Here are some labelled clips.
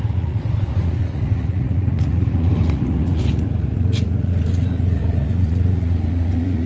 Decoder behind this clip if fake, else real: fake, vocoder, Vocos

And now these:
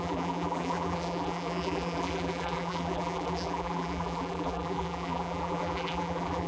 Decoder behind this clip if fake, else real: fake, vocoder, BigVGAN v2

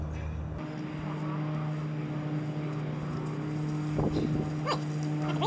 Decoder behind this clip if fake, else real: real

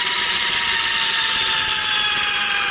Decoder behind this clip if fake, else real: real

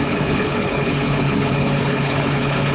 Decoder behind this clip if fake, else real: fake, codec, HILCodec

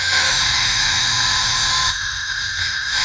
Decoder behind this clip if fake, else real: fake, autoencoder, DAC-VAE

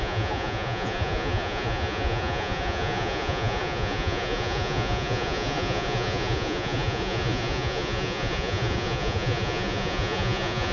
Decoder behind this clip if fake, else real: fake, vocoder, Vocos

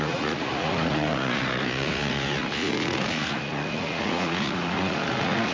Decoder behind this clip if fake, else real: fake, vocoder, Vocos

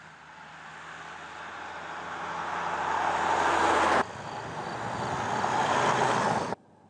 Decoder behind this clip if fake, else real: real